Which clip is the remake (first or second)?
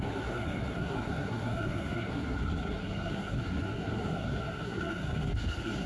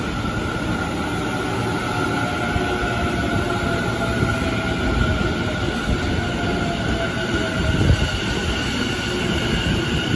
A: first